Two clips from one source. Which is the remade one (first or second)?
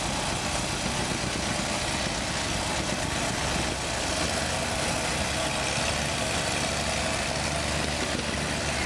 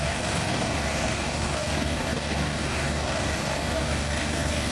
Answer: second